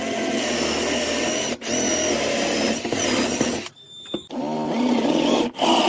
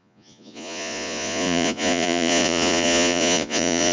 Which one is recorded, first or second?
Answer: first